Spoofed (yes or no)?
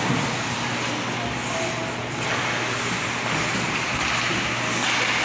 no